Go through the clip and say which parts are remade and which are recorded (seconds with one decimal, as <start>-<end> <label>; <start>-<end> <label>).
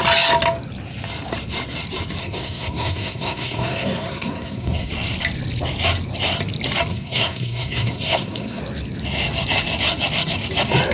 0.0-2.2 recorded; 2.2-4.9 remade; 4.9-6.9 recorded; 6.9-8.6 remade; 8.6-10.9 recorded